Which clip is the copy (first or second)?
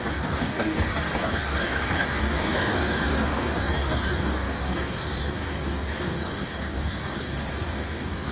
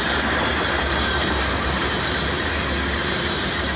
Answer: first